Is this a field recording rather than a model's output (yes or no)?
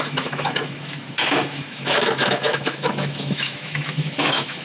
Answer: no